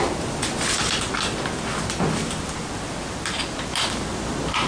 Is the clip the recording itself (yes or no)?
yes